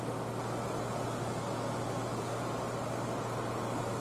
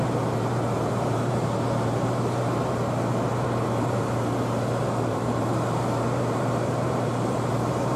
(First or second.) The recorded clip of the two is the first